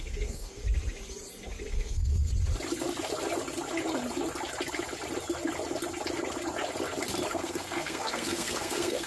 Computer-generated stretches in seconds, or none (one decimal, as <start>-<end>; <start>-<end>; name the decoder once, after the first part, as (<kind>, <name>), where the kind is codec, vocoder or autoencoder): 0.0-0.6 (codec, SNAC); 1.7-2.3; 7.3-9.1